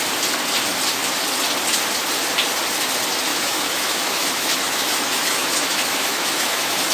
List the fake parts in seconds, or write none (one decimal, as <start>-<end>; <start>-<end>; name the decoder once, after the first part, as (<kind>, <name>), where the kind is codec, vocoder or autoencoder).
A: 3.3-6.9 (autoencoder, DAC-VAE)

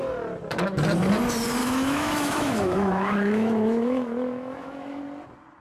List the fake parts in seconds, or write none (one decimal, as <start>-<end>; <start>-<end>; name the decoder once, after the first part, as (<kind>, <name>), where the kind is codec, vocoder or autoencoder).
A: 1.6-5.0 (autoencoder, DAC-VAE)